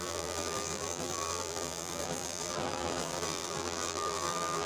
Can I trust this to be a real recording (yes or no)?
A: no